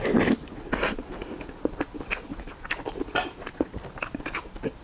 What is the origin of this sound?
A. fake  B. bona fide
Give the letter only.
B